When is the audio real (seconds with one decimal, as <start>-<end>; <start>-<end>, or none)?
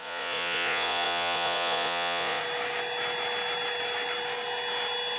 2.4-5.2